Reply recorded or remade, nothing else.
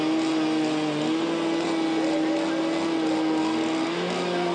recorded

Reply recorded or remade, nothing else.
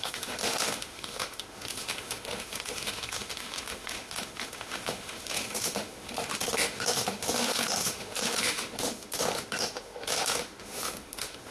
remade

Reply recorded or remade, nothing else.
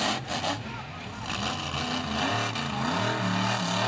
recorded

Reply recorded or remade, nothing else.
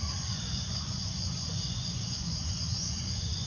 remade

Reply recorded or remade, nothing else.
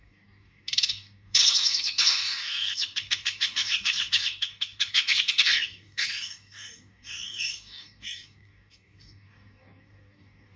remade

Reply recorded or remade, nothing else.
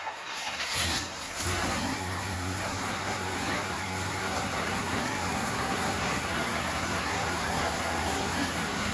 remade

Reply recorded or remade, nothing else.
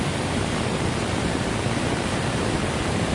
recorded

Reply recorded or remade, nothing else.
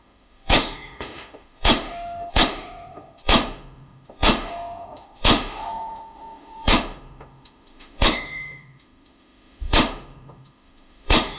remade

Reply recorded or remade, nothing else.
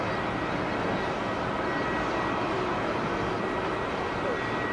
recorded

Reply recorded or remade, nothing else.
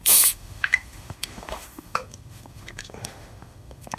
remade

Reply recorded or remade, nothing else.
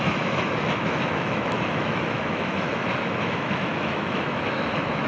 remade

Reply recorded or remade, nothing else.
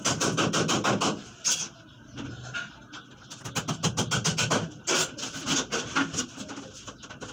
recorded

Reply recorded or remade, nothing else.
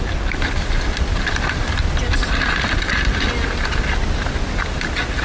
recorded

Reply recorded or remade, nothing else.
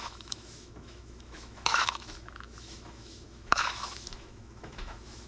remade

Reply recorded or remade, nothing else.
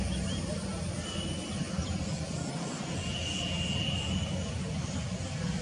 recorded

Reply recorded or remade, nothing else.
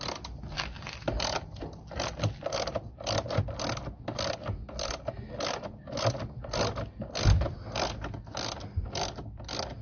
recorded